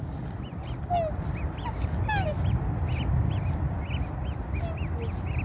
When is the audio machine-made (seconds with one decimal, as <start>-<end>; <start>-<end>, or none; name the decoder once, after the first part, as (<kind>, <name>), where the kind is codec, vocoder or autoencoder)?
none